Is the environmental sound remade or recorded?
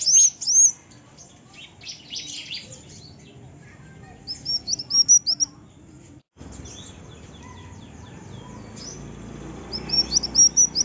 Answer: recorded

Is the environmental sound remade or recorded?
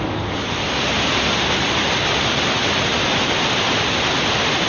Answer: recorded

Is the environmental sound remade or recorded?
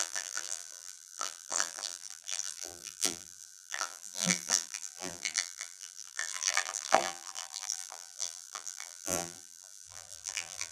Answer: remade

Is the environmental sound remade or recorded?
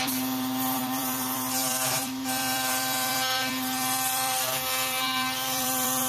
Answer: remade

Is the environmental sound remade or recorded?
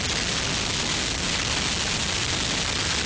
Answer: recorded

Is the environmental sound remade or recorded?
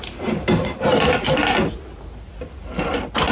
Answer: recorded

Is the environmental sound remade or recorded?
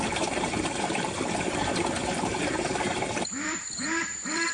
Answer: remade